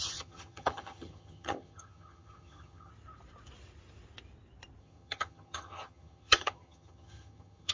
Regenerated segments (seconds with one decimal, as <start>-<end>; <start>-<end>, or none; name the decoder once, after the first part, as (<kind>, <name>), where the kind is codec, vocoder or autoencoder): 0.0-2.9 (vocoder, HiFi-GAN); 4.8-7.7